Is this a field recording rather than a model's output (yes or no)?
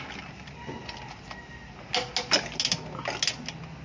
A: yes